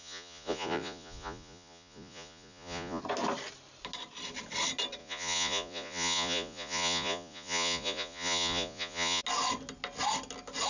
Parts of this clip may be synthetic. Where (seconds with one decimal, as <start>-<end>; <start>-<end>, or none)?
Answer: 0.0-3.0; 5.0-9.2